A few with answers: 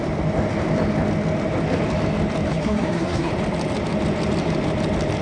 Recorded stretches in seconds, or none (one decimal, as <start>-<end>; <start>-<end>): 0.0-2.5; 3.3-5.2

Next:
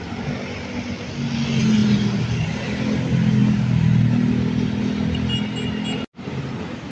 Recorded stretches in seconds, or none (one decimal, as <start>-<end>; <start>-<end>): 0.0-6.9

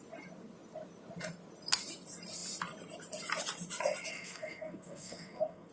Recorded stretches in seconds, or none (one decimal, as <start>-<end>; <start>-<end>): 0.0-4.1

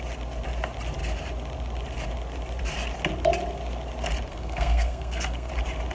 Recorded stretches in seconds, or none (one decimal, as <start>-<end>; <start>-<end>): 0.0-4.3; 5.5-5.9

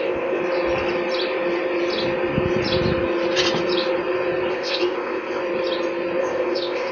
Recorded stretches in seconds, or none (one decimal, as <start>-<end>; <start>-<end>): 0.4-4.5; 5.4-6.2